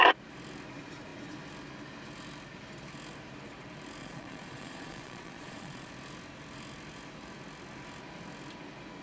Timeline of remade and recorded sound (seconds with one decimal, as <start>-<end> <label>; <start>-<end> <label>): 0.0-4.0 recorded; 4.0-5.9 remade; 5.9-9.0 recorded